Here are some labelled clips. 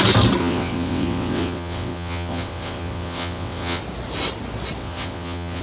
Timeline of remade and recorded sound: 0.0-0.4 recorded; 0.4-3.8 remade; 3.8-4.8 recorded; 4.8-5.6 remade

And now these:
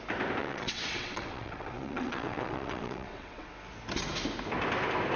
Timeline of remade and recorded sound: 0.0-0.4 recorded; 0.4-3.5 remade; 3.5-5.2 recorded

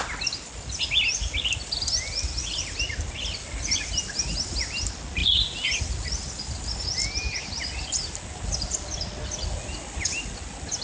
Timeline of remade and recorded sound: 0.0-10.8 recorded

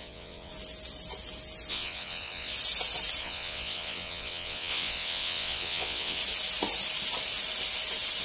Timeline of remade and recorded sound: 0.0-0.5 remade; 0.5-1.7 recorded; 1.7-2.5 remade; 2.5-3.2 recorded; 3.2-6.2 remade; 6.2-8.2 recorded

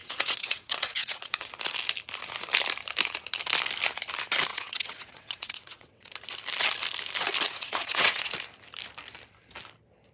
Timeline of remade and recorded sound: 0.0-1.5 remade; 1.5-4.5 recorded; 4.5-6.1 remade; 6.1-7.5 recorded; 7.5-8.3 remade; 8.3-10.1 recorded

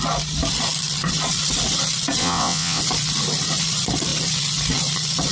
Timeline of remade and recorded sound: 0.0-2.2 recorded; 2.2-2.8 remade; 2.8-5.3 recorded